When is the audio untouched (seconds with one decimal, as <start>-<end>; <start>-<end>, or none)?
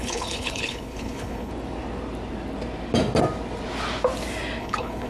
1.5-4.6